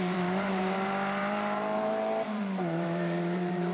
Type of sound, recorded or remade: remade